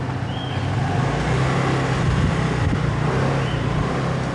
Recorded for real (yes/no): yes